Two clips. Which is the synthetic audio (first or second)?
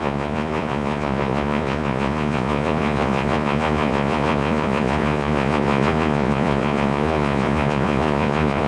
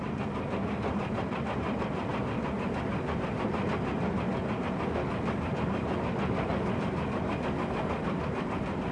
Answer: first